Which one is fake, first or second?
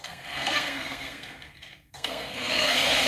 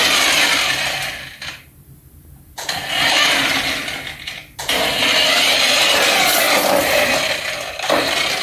first